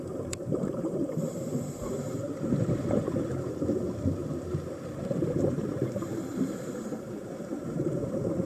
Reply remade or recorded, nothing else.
remade